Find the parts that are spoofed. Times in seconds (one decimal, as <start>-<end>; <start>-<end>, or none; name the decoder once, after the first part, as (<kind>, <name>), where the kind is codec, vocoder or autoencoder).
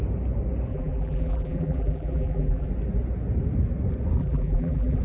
0.7-2.7 (vocoder, BigVGAN v2); 4.2-5.0